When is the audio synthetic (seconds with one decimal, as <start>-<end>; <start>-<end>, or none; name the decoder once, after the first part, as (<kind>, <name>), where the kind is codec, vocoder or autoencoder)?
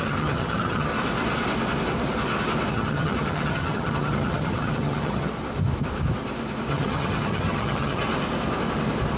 0.0-0.9 (vocoder, HiFi-GAN); 2.7-5.3; 6.7-8.0